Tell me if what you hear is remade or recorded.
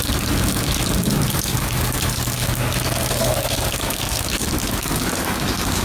remade